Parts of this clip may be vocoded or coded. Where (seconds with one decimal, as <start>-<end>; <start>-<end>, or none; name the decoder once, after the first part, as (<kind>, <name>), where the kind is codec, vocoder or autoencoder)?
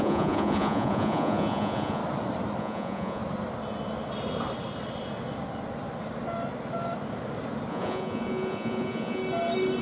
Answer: 0.0-2.0 (vocoder, Vocos); 2.6-3.2; 7.7-9.2